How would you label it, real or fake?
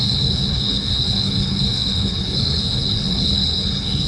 fake